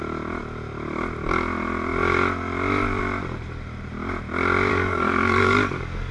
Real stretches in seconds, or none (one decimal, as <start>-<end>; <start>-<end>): 0.0-4.7